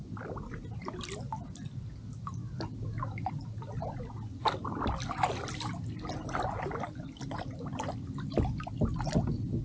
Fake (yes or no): no